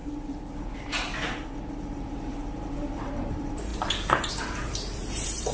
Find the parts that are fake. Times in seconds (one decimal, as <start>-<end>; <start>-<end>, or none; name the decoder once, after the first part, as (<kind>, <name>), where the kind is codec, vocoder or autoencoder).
0.0-1.1 (vocoder, BigVGAN v2); 1.6-5.5